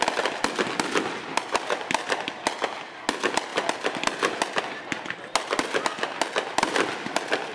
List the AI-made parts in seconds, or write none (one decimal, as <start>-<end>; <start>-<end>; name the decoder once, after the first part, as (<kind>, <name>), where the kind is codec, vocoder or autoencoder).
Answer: none